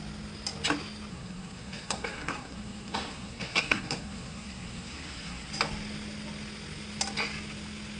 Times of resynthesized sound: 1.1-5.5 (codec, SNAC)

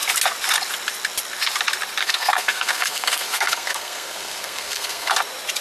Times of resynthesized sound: 2.0-5.1 (codec, SNAC)